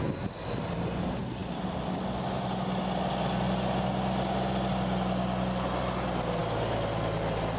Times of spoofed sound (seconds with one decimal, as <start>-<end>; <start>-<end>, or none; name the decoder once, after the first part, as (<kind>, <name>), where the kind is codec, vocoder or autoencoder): none